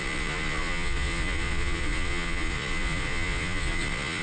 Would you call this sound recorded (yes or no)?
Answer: no